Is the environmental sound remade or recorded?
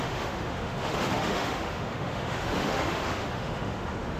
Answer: remade